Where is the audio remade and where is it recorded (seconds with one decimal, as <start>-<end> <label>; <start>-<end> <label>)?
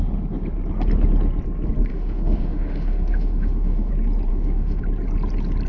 0.0-1.9 recorded; 1.9-3.9 remade; 3.9-4.3 recorded; 4.3-4.8 remade; 4.8-5.7 recorded